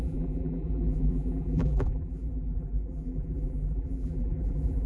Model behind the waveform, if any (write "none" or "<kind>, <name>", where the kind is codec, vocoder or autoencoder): vocoder, BigVGAN v2